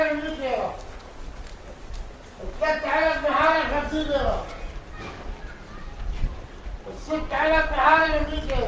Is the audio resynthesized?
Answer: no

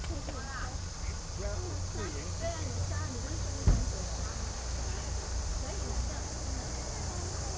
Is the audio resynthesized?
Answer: no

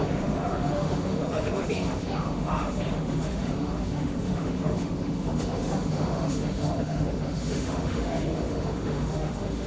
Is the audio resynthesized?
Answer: yes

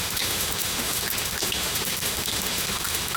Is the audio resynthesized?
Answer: yes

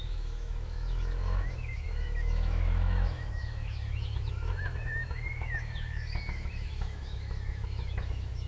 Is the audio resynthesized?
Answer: yes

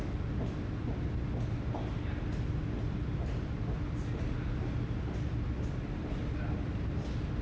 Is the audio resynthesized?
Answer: no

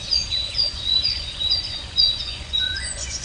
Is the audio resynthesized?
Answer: yes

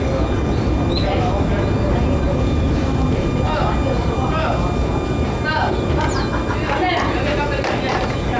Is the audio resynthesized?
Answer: no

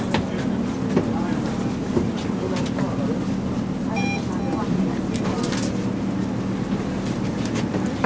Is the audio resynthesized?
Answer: no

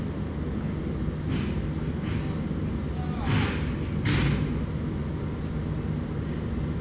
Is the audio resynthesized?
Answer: no